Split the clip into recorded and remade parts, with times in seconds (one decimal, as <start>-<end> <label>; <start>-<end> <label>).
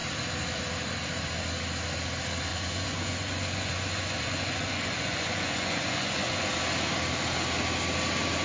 0.0-2.5 recorded; 2.5-6.5 remade; 6.5-8.4 recorded